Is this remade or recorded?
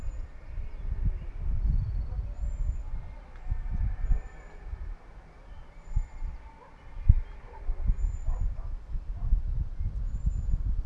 recorded